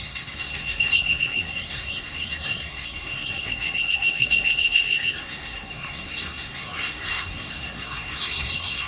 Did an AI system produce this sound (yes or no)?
yes